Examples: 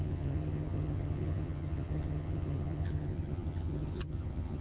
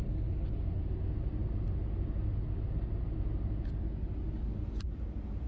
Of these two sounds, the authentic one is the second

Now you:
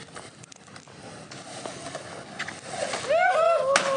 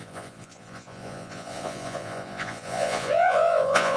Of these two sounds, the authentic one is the first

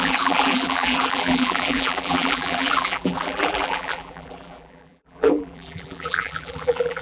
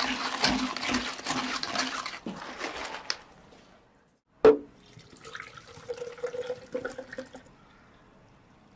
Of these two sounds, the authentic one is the second